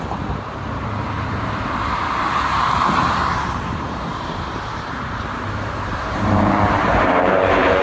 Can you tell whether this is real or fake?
fake